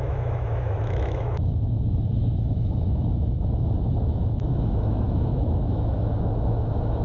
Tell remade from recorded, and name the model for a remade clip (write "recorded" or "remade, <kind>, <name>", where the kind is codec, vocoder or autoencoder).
remade, autoencoder, DAC-VAE